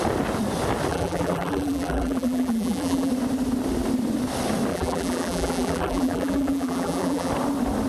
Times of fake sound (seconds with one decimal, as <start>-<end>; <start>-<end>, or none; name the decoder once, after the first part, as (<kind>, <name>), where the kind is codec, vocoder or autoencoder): 0.9-3.1 (vocoder, BigVGAN v2); 4.7-7.3